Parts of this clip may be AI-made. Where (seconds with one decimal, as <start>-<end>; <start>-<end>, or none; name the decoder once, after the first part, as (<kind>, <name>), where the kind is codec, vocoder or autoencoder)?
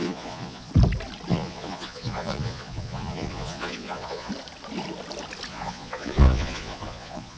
0.0-0.7 (vocoder, Vocos); 1.3-4.3; 5.5-7.4